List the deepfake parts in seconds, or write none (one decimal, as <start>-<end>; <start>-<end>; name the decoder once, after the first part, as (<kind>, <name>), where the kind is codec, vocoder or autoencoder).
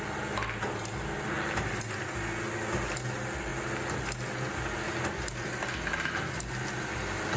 none